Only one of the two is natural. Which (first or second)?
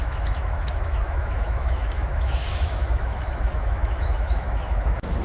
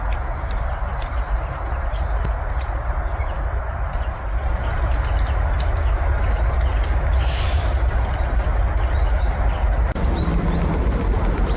second